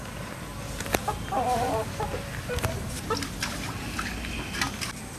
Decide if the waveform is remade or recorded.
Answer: recorded